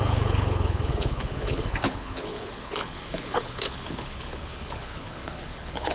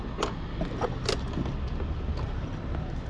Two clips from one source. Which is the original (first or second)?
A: second